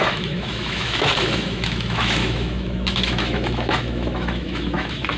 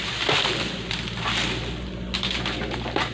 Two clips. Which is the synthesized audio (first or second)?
first